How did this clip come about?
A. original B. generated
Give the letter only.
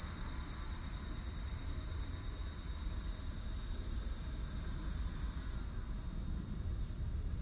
A